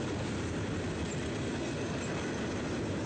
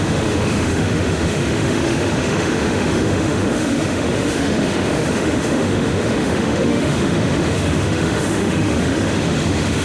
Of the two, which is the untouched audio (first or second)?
first